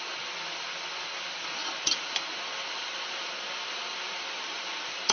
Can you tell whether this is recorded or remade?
recorded